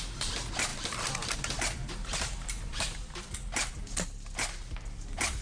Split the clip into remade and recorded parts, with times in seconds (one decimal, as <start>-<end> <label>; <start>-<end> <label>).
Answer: 0.0-5.4 recorded